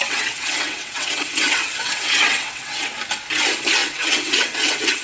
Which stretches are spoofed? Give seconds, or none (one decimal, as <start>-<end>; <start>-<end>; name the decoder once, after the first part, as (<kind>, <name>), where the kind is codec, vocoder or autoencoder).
0.0-2.9 (vocoder, WaveNeXt); 3.8-5.0